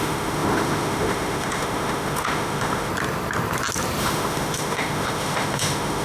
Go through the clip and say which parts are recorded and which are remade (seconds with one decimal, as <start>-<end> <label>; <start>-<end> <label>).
0.0-2.9 remade; 2.9-4.0 recorded; 4.0-6.0 remade